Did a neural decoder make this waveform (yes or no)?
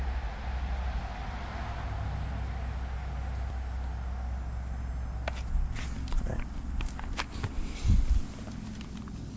no